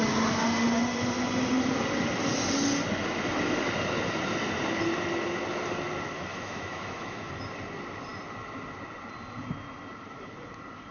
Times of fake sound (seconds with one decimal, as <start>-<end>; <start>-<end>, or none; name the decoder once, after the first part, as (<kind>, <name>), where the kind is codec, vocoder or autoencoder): 6.3-7.3 (autoencoder, DAC-VAE)